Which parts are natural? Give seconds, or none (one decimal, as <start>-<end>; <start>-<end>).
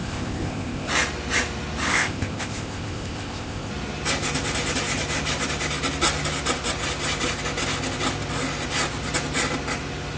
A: 0.9-1.9; 3.7-10.2